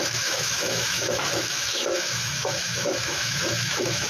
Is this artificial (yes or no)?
yes